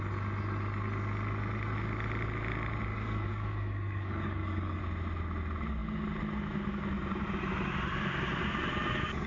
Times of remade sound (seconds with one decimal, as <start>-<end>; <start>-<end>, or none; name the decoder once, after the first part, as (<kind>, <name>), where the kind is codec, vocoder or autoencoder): 2.9-4.8 (codec, DAC)